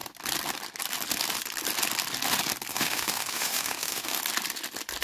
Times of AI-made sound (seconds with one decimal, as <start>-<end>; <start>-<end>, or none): 2.7-4.2